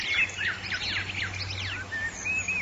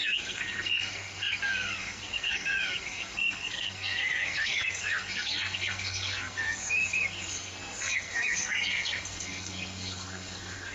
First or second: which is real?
first